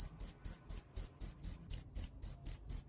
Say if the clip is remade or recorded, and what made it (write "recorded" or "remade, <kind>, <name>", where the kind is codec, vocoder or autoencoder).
recorded